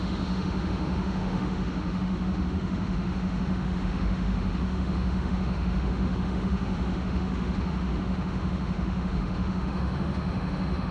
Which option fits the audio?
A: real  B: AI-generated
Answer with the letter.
B